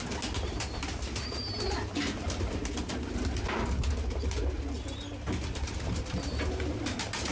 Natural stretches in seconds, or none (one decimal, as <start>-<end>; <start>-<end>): 0.0-7.3